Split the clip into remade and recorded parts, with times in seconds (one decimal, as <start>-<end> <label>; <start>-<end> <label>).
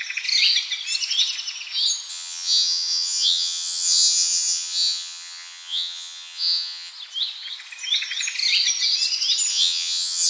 0.0-2.1 recorded; 2.1-6.9 remade; 6.9-9.5 recorded; 9.5-10.3 remade